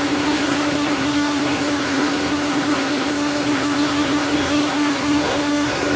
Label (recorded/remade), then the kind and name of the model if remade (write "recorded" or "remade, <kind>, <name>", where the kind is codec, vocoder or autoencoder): remade, codec, SNAC